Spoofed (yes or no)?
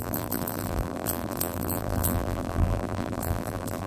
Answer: yes